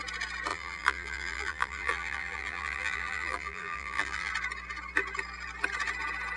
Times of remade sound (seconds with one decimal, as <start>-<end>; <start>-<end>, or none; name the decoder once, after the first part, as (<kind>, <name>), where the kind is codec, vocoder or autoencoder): 0.5-4.3 (vocoder, BigVGAN v2)